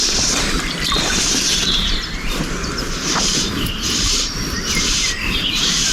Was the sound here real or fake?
fake